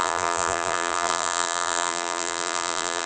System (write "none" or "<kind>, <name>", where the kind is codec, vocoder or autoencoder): vocoder, BigVGAN v2